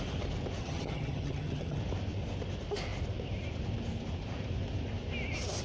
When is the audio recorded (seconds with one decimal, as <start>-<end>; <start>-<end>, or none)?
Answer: 0.0-0.6; 1.8-5.6